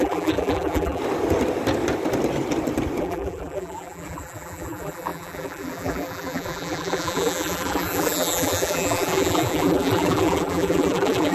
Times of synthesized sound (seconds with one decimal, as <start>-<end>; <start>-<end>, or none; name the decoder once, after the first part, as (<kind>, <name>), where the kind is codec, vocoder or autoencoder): 0.0-1.0 (vocoder, BigVGAN v2); 3.0-11.3